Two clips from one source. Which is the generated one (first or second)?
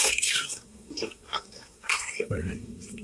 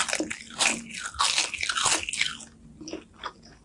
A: first